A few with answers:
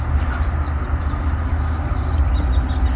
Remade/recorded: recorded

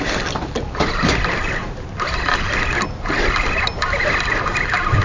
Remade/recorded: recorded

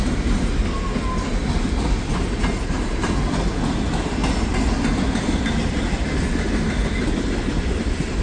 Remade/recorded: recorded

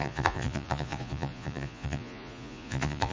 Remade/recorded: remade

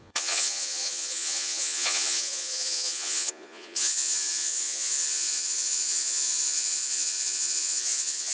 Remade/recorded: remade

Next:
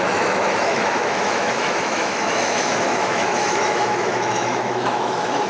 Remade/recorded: remade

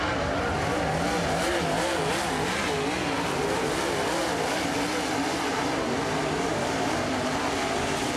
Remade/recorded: recorded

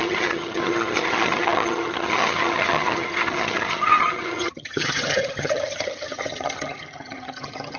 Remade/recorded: remade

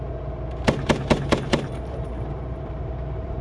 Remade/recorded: remade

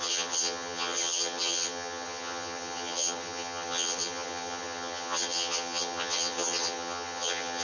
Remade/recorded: remade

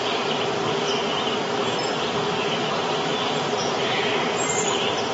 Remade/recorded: recorded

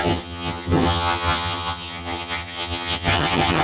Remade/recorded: remade